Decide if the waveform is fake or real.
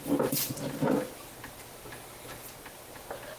real